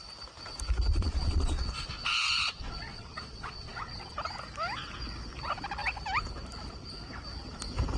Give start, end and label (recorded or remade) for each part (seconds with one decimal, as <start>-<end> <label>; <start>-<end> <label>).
0.0-0.9 recorded; 0.9-4.1 remade; 4.1-8.0 recorded